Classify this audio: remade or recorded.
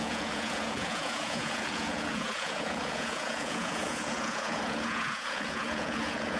remade